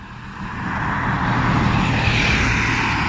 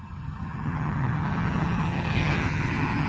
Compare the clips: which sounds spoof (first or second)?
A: second